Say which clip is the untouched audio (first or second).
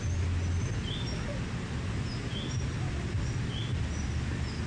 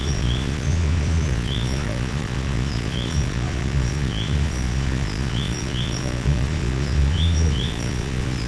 first